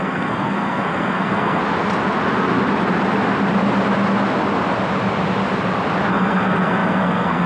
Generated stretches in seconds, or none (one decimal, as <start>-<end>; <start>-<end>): 0.0-1.6; 6.1-7.5